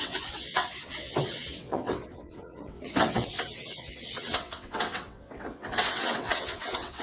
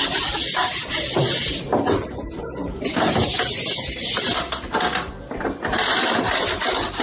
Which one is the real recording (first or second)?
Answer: second